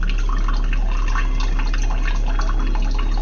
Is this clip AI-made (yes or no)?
no